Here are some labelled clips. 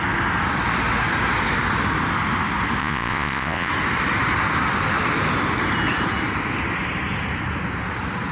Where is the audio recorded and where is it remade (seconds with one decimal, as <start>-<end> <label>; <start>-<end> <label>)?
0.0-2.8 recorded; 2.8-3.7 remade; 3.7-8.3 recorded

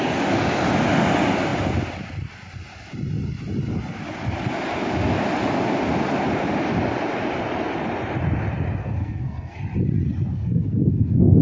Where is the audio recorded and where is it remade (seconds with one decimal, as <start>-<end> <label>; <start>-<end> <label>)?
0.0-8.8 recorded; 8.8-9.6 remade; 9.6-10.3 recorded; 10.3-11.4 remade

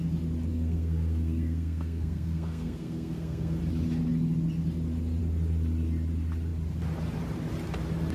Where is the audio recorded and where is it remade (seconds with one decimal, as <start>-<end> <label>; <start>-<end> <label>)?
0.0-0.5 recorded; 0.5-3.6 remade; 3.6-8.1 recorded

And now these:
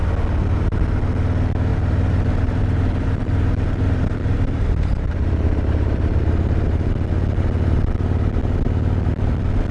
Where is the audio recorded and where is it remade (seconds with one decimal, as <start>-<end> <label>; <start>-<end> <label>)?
0.0-1.7 recorded; 1.7-6.9 remade; 6.9-9.7 recorded